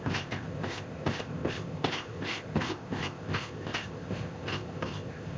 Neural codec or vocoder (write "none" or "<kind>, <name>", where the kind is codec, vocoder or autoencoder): codec, ZipCodec